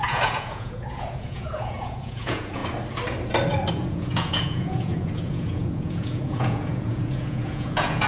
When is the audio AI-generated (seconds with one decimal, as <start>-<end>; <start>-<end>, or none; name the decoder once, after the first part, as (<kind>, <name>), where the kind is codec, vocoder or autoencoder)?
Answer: 0.0-2.6 (vocoder, Vocos); 3.7-8.1